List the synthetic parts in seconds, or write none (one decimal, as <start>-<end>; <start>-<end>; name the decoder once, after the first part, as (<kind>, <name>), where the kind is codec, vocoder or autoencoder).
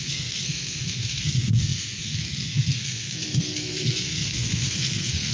0.0-5.3 (codec, SNAC)